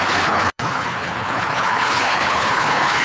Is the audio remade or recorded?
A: remade